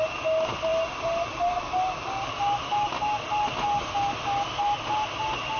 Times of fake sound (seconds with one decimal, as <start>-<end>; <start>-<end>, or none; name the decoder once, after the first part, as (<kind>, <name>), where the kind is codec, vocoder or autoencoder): none